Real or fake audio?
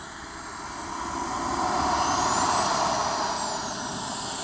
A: real